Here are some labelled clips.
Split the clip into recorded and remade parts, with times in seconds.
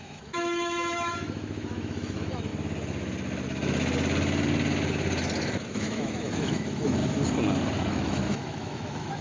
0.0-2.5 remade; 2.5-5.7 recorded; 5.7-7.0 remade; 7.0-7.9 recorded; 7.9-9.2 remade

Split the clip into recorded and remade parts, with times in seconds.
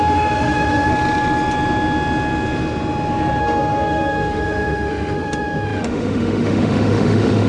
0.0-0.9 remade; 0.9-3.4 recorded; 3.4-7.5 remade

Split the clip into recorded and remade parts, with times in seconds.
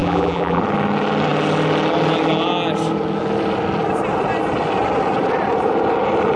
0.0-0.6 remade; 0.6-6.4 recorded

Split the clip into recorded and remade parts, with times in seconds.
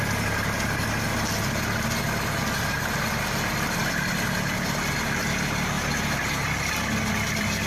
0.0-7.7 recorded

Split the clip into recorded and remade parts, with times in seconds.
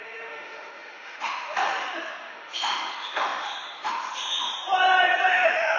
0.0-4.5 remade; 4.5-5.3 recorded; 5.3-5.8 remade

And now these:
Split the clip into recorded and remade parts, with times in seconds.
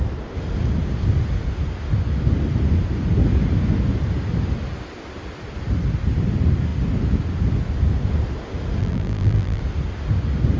0.0-8.8 recorded; 8.8-9.6 remade; 9.6-10.6 recorded